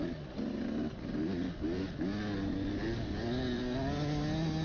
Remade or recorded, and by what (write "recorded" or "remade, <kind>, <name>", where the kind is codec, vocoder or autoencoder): recorded